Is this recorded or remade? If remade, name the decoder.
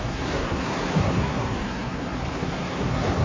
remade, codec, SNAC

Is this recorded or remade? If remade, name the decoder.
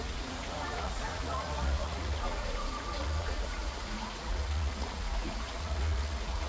remade, vocoder, Vocos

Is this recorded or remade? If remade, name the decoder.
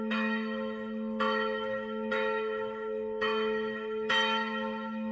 remade, autoencoder, DAC-VAE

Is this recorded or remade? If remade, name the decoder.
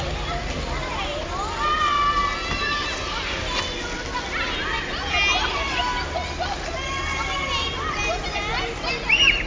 recorded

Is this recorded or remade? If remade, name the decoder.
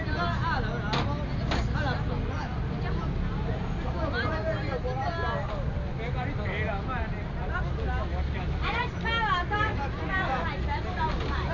recorded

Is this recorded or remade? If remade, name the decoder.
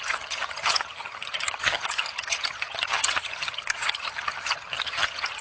remade, vocoder, HiFi-GAN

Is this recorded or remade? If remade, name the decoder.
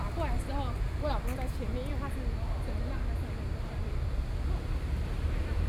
recorded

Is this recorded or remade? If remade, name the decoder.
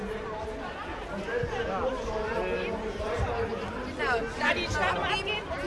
recorded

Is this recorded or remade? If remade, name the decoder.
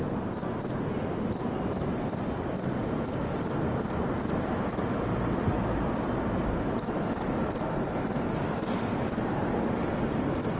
recorded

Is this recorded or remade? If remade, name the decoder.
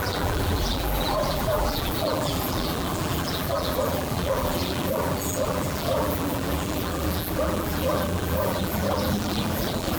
remade, vocoder, BigVGAN v2